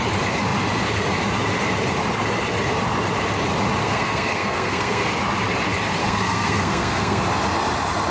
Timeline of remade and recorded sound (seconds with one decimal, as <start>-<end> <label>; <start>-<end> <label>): 0.0-3.8 recorded; 3.8-5.1 remade; 5.1-6.0 recorded; 6.0-7.2 remade; 7.2-8.1 recorded